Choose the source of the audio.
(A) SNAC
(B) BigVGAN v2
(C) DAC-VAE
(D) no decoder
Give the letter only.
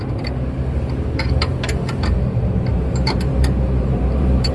B